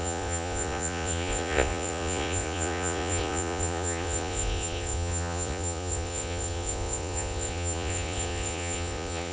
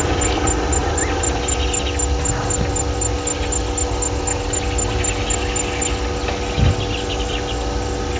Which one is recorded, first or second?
second